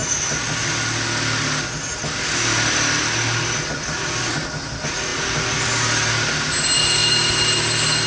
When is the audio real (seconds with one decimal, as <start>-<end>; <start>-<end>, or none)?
0.0-8.1